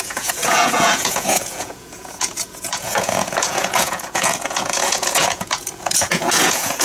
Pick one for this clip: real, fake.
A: fake